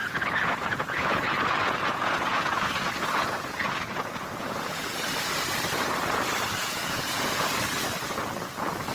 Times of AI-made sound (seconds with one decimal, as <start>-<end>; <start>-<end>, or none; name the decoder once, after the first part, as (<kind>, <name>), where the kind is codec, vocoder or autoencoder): 0.0-4.8 (vocoder, Vocos); 6.6-7.5